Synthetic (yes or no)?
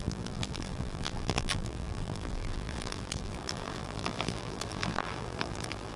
yes